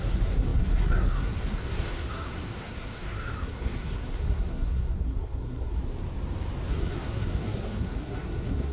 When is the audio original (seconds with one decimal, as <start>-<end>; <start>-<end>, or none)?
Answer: 5.8-6.7